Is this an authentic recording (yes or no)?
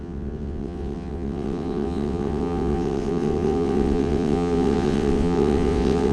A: no